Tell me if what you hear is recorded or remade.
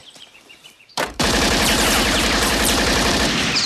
remade